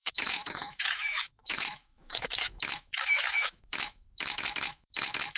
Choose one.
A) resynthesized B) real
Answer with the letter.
A